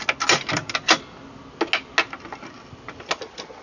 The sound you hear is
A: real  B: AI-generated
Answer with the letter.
A